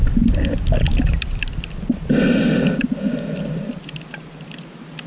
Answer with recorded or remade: recorded